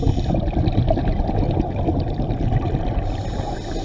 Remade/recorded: recorded